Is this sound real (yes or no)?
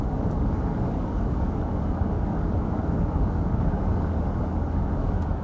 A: no